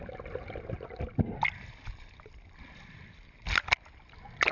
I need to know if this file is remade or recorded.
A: recorded